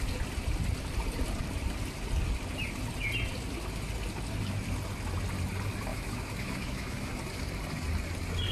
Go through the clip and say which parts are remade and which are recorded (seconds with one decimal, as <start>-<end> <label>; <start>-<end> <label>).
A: 0.0-5.9 recorded; 5.9-7.1 remade; 7.1-8.5 recorded

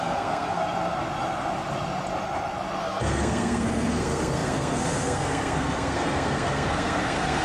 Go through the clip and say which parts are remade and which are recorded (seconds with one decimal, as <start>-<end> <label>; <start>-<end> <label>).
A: 0.0-0.6 remade; 0.6-2.8 recorded; 2.8-7.4 remade

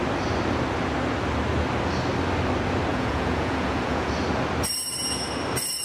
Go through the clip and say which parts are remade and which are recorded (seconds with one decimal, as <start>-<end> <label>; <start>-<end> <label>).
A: 0.0-2.9 recorded; 2.9-4.1 remade; 4.1-5.8 recorded

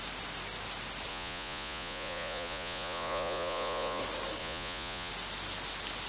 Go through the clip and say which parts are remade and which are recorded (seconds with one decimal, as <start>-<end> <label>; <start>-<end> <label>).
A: 0.0-1.1 recorded; 1.1-4.0 remade; 4.0-4.4 recorded; 4.4-5.1 remade; 5.1-6.1 recorded

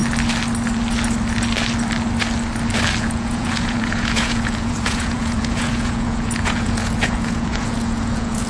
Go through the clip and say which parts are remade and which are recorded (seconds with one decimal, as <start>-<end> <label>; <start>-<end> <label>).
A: 0.0-3.0 recorded; 3.0-8.5 remade